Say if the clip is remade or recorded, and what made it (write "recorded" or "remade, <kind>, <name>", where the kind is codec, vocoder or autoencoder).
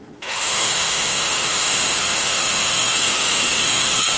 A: remade, autoencoder, DAC-VAE